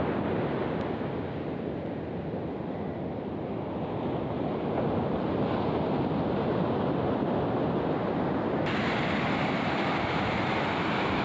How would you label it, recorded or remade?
recorded